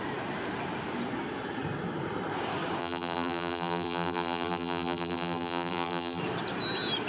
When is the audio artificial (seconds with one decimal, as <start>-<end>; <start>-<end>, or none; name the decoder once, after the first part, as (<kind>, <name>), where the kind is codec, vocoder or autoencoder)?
2.8-6.2 (vocoder, BigVGAN v2)